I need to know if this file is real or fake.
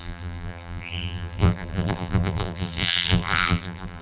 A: fake